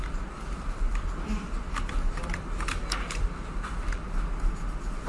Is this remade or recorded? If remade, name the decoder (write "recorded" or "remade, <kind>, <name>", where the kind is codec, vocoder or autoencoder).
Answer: recorded